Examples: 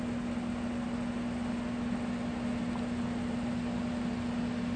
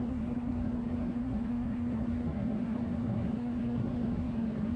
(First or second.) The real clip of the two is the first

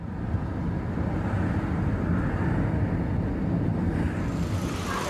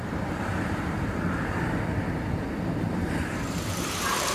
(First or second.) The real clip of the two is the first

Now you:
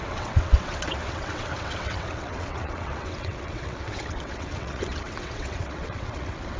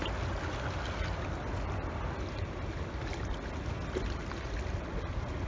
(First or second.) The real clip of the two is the second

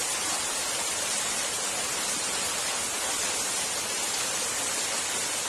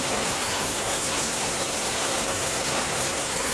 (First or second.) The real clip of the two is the first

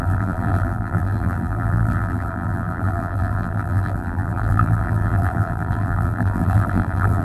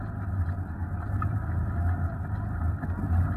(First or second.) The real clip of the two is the second